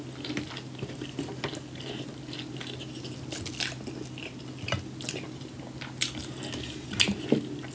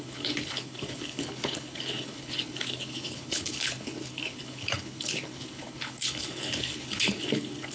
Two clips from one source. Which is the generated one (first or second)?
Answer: second